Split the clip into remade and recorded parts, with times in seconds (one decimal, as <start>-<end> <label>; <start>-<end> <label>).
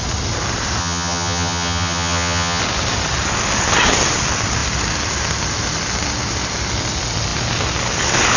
0.0-0.8 recorded; 0.8-2.6 remade; 2.6-8.4 recorded